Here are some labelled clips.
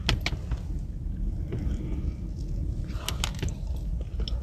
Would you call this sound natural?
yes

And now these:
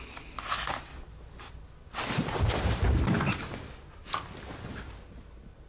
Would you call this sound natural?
yes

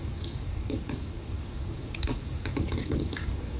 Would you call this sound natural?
no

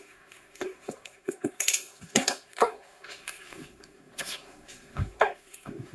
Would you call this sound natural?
no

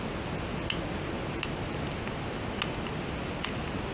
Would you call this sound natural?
yes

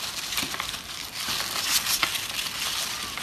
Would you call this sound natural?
yes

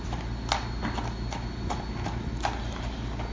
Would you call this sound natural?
yes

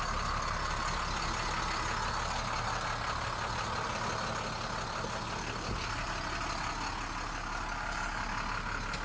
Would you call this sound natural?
yes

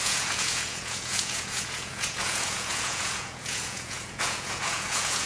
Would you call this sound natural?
no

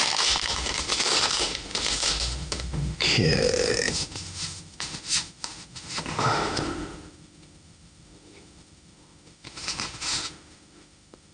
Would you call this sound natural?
no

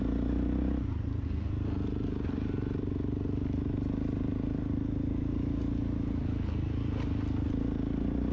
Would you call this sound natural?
yes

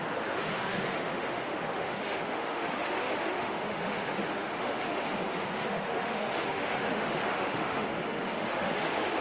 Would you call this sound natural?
no